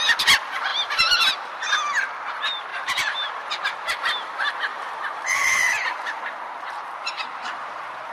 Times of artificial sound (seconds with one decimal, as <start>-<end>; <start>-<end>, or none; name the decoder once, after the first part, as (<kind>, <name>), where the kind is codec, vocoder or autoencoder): 0.7-1.3 (vocoder, BigVGAN v2); 2.7-3.5; 4.7-6.2